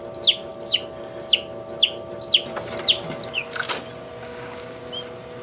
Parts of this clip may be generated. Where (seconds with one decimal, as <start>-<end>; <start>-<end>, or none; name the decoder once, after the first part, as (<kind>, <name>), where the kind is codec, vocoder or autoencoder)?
4.2-4.8 (codec, DAC)